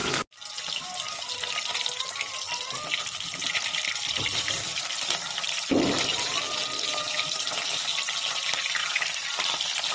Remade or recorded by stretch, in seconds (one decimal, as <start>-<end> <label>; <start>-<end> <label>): 0.0-3.4 recorded; 3.4-6.1 remade; 6.1-8.8 recorded; 8.8-9.9 remade